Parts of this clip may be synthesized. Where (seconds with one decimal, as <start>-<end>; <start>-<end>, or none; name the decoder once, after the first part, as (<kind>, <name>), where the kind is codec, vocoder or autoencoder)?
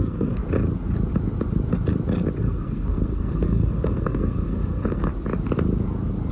0.0-0.4 (codec, SNAC); 2.4-5.1